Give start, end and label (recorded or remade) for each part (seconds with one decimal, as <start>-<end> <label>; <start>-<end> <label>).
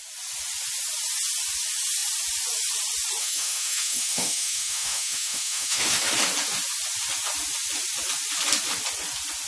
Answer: 0.0-3.2 recorded; 3.2-6.0 remade; 6.0-9.5 recorded